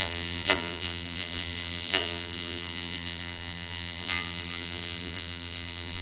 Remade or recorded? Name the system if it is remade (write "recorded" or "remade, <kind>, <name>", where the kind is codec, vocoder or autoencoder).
remade, vocoder, BigVGAN v2